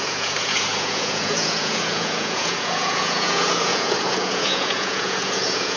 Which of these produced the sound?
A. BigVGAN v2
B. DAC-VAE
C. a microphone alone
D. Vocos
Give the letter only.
D